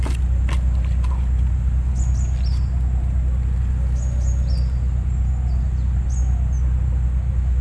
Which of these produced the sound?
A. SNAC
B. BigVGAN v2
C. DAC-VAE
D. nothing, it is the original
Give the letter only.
D